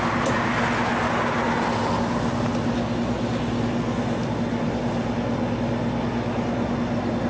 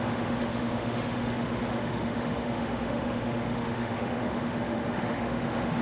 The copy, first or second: second